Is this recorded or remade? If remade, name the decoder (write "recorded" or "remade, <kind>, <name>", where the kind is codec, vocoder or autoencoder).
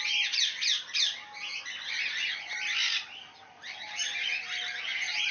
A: recorded